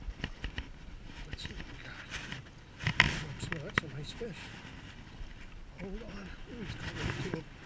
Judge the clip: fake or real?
real